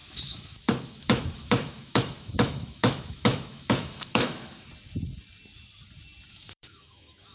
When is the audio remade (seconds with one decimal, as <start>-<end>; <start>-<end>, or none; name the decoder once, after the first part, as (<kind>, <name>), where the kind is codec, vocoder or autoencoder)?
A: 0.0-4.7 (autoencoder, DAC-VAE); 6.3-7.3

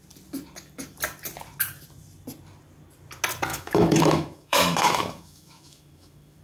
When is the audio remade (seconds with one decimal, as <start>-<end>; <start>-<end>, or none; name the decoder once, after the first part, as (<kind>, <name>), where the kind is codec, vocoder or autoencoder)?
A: 3.5-6.4 (autoencoder, DAC-VAE)

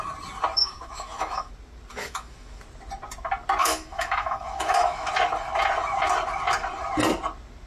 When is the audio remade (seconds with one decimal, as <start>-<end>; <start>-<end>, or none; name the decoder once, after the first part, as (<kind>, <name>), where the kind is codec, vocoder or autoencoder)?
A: 0.6-1.5 (autoencoder, DAC-VAE); 1.9-2.6; 3.6-5.1